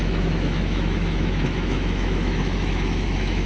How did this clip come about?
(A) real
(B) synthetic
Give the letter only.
B